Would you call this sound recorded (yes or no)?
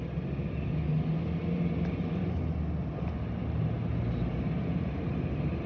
yes